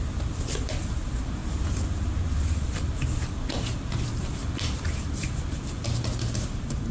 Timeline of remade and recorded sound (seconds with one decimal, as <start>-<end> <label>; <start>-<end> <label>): 0.0-4.4 recorded; 4.4-5.8 remade; 5.8-6.9 recorded